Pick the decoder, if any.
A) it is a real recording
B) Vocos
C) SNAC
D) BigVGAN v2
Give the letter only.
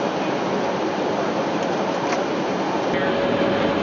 A